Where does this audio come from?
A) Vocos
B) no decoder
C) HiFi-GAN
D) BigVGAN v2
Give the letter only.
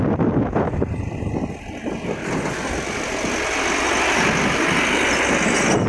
B